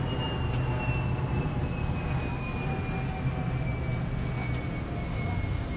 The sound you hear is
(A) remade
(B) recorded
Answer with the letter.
B